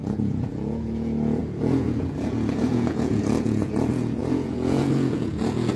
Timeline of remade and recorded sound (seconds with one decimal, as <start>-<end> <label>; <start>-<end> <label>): 0.0-5.8 remade